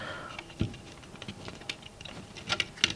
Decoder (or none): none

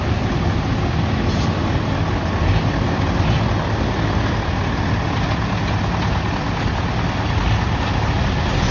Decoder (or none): none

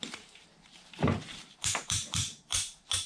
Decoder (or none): vocoder, BigVGAN v2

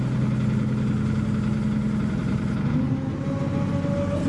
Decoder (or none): none